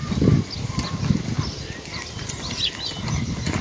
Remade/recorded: recorded